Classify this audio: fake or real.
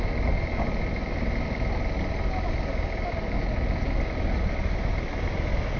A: real